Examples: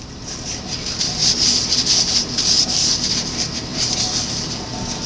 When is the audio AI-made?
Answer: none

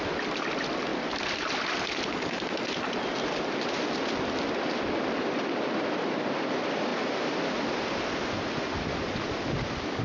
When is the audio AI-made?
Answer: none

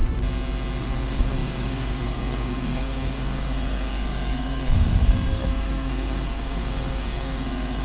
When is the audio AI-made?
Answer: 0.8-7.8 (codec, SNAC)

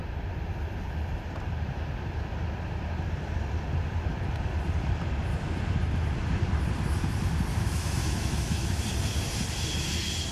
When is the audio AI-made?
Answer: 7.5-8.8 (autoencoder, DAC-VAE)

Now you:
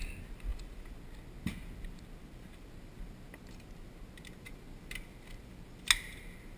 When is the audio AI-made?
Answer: none

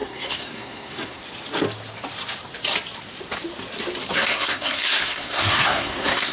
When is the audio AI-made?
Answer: 0.0-1.2 (codec, SNAC); 4.1-6.3

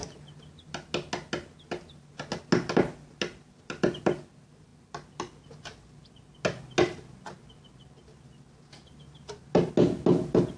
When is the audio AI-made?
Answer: none

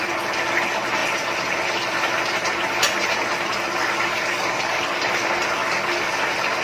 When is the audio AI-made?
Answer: 3.8-5.0 (codec, DAC); 5.6-6.1